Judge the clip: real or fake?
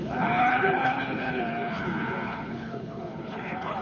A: fake